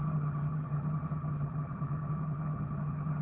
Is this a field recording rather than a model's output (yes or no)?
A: no